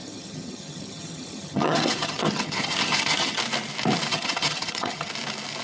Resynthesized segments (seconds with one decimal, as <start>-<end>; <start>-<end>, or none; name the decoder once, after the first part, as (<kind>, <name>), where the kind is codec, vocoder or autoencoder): 0.0-3.4 (vocoder, HiFi-GAN); 4.1-5.1